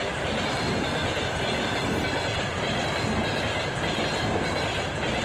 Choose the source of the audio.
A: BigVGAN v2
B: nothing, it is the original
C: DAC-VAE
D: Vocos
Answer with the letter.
B